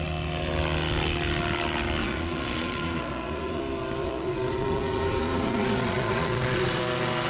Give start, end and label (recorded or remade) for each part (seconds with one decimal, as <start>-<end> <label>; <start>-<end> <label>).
0.0-2.0 recorded; 2.0-3.6 remade; 3.6-4.0 recorded; 4.0-6.8 remade; 6.8-7.3 recorded